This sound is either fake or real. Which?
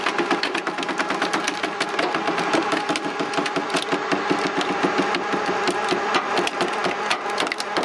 real